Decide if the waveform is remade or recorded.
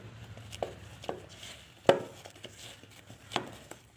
recorded